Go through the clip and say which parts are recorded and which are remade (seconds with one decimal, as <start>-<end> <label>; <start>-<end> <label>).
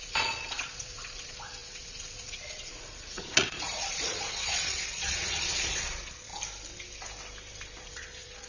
0.0-6.3 remade; 6.3-7.8 recorded; 7.8-8.5 remade